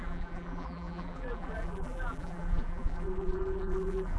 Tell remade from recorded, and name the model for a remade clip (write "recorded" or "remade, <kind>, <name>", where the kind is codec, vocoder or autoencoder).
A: remade, vocoder, BigVGAN v2